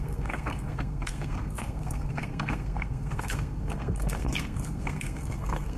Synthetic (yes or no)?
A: yes